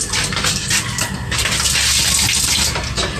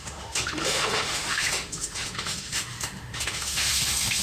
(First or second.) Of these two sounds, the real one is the first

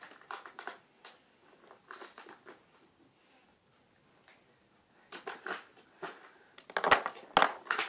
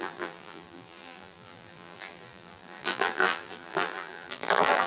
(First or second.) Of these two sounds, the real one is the first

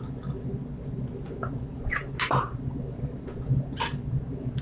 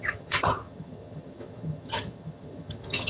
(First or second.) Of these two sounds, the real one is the first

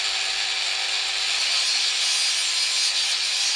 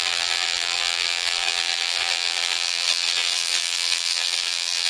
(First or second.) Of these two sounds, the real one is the first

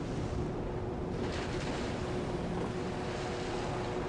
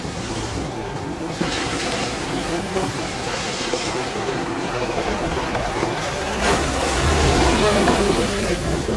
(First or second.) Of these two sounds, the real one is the first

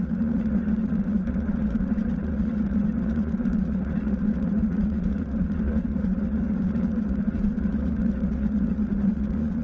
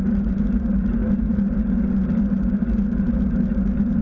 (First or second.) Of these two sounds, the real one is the second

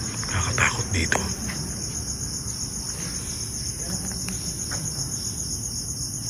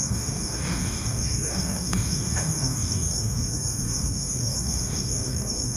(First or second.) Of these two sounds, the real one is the first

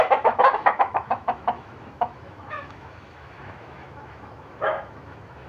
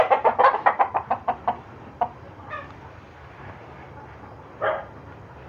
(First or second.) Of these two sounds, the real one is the second